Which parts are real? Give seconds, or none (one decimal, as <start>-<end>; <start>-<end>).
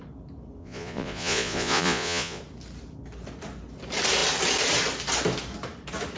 0.0-0.6; 2.4-6.2